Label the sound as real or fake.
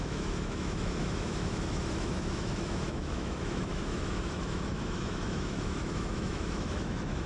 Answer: fake